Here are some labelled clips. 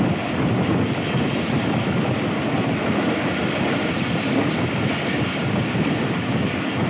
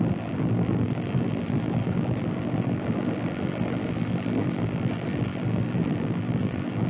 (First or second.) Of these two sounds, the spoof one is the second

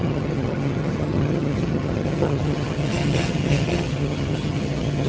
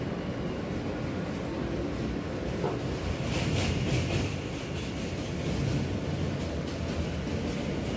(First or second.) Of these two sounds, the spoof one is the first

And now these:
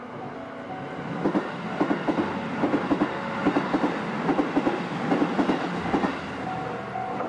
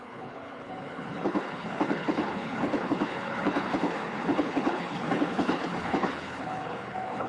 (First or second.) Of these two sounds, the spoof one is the second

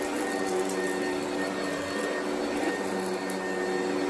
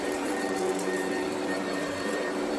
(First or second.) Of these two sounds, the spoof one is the second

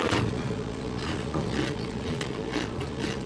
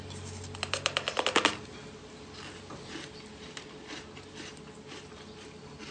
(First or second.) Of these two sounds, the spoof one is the first